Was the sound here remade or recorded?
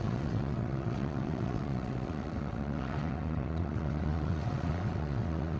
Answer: remade